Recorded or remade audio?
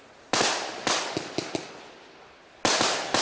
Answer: recorded